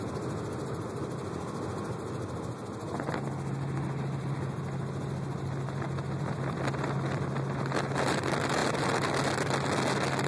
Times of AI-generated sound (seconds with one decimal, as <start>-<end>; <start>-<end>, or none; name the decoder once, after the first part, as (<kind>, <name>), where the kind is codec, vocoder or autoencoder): 8.6-9.7 (vocoder, BigVGAN v2)